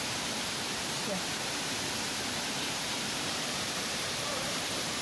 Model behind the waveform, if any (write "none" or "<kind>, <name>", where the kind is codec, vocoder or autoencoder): vocoder, BigVGAN v2